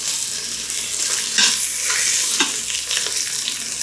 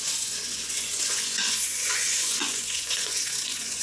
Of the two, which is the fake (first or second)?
second